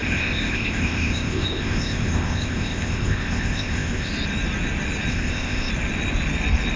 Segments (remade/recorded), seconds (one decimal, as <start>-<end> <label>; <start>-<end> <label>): 0.0-4.1 remade; 4.1-5.1 recorded; 5.1-5.7 remade; 5.7-6.8 recorded